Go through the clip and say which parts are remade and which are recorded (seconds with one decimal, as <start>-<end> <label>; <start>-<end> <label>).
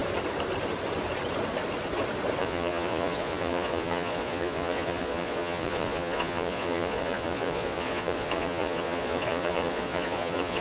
0.0-2.4 recorded; 2.4-10.6 remade